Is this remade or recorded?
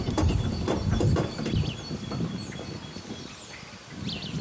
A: remade